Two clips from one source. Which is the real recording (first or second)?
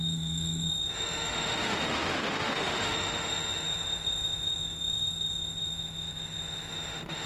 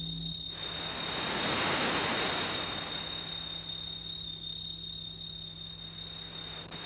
second